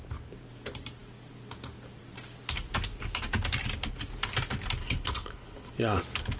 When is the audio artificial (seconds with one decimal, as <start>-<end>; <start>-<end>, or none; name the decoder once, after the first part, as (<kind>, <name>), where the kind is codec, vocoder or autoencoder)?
4.8-5.7 (codec, HILCodec)